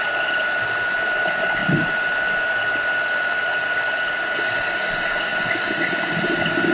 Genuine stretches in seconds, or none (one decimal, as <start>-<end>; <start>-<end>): none